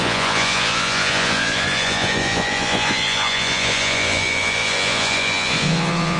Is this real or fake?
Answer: fake